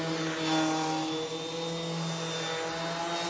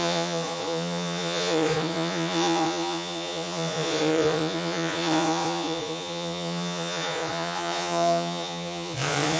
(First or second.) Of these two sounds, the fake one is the second